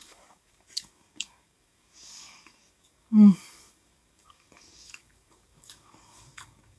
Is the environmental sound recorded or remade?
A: remade